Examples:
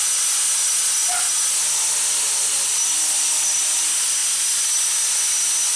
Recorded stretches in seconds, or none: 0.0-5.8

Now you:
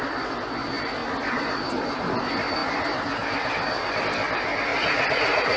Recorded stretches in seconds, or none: 0.0-4.7

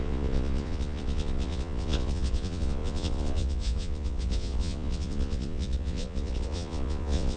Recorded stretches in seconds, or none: none

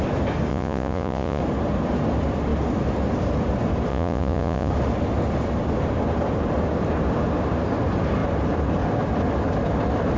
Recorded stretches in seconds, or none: 0.0-0.5; 1.4-3.9; 4.7-10.2

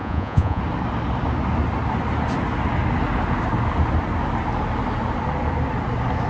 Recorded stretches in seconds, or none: 0.6-6.3

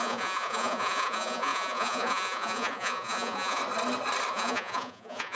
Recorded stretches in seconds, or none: 3.6-4.3

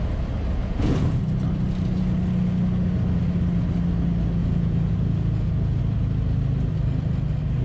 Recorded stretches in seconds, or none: 0.0-0.6; 1.2-4.4; 5.8-7.6

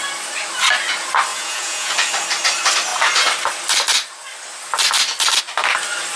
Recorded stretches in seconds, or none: 0.0-1.3; 1.9-6.2